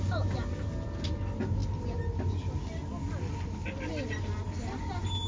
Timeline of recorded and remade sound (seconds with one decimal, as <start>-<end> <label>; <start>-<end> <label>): 0.0-5.3 recorded